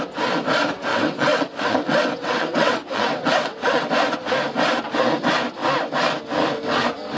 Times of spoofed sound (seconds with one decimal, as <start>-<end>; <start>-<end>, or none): 0.9-3.9